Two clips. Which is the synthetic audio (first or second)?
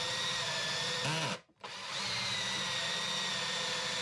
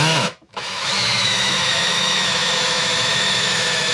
second